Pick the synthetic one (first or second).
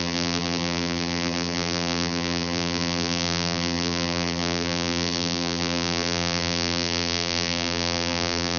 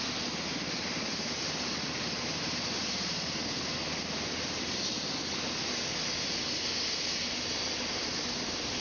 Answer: first